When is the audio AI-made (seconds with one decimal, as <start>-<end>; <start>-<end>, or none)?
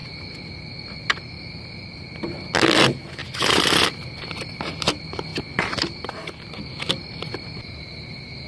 none